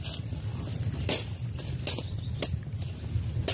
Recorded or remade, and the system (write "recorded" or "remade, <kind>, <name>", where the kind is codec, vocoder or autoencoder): recorded